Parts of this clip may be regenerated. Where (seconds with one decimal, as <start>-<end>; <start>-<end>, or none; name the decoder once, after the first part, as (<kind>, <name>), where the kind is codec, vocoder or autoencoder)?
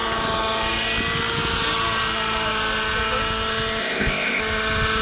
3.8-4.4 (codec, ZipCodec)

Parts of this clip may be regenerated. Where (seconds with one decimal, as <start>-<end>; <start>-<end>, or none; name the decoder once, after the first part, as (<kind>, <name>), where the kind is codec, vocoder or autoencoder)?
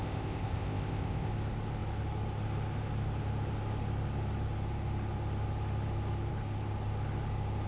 0.0-1.3 (codec, ZipCodec)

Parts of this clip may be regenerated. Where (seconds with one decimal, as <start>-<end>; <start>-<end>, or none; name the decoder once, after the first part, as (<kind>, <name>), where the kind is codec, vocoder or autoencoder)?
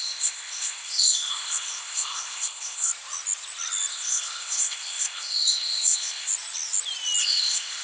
0.0-2.9 (codec, ZipCodec); 3.9-6.3; 7.2-7.8